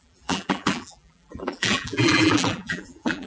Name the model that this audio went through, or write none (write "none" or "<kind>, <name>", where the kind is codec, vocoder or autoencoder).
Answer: vocoder, BigVGAN v2